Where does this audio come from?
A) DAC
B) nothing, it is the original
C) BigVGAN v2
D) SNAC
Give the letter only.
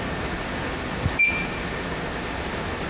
C